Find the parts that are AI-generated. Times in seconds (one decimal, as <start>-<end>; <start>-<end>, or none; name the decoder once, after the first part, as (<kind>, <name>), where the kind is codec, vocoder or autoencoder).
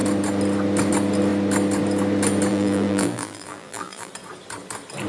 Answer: 2.5-4.1 (vocoder, BigVGAN v2)